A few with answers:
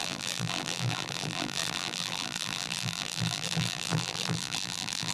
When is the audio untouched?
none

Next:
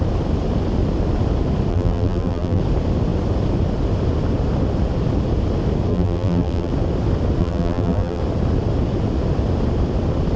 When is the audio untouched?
0.0-1.7; 2.6-5.9; 6.7-7.4; 8.2-10.4

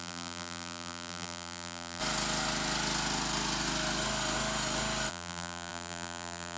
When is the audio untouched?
2.0-5.1

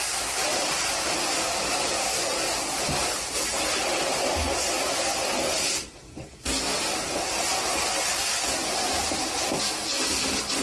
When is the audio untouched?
0.0-0.5; 4.3-8.1; 9.0-10.6

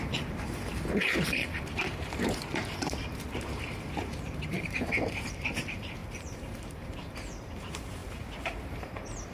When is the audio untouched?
none

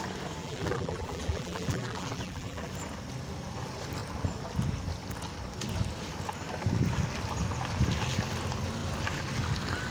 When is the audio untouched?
0.0-0.4; 2.7-9.9

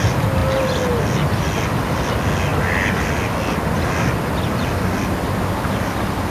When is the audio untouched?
0.0-6.3

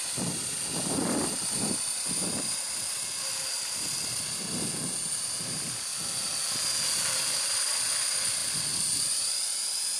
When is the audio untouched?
5.9-7.4